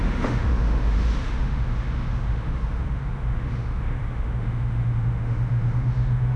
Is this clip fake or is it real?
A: fake